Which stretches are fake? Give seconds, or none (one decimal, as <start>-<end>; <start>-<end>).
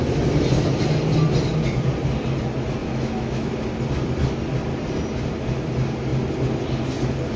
2.8-3.5